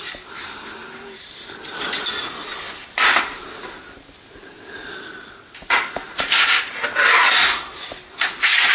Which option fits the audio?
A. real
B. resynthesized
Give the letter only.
A